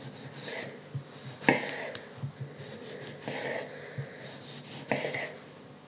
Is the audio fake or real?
real